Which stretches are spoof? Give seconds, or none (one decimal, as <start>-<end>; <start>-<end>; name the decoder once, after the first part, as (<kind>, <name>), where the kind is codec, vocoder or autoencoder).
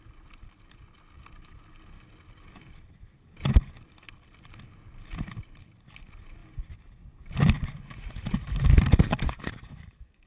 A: none